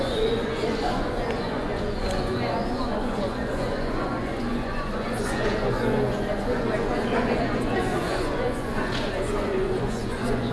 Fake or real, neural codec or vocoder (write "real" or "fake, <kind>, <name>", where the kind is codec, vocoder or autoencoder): fake, vocoder, Vocos